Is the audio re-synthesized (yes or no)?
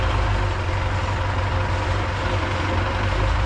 no